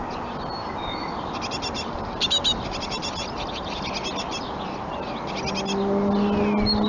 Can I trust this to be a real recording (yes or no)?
yes